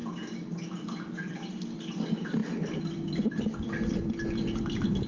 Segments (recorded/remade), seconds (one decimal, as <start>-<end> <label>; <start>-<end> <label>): 0.0-5.1 recorded